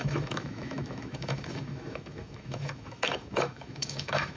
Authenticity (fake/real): fake